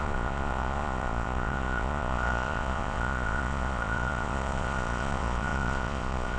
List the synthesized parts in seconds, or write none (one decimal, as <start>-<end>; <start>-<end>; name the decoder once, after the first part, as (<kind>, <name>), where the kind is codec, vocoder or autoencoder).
0.0-6.4 (vocoder, Vocos)